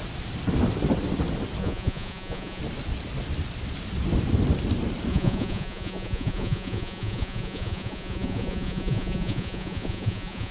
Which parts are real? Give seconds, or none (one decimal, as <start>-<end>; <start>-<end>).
0.0-1.6; 2.6-5.1